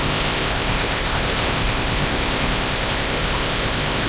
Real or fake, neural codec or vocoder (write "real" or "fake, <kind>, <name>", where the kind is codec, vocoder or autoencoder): fake, codec, ZipCodec